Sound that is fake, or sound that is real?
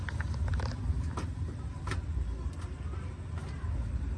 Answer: real